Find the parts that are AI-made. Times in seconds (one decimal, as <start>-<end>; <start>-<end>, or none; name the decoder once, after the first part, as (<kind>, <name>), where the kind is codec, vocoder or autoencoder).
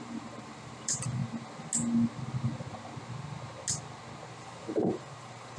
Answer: 0.0-1.2 (vocoder, BigVGAN v2); 4.6-5.6